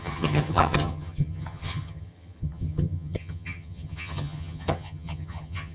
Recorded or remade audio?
remade